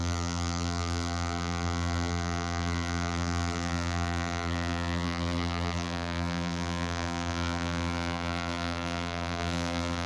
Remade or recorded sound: remade